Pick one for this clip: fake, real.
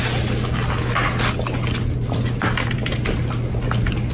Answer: real